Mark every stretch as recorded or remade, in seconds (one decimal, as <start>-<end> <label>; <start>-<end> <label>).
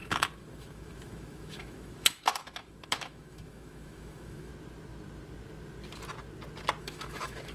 0.0-4.5 remade; 4.5-6.8 recorded; 6.8-7.5 remade